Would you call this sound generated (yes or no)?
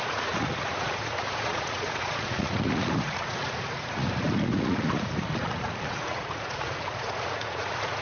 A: yes